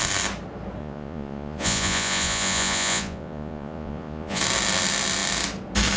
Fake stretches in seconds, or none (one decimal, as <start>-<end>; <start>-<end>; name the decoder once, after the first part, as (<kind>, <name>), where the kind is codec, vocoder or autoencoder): 0.8-4.4 (vocoder, Vocos)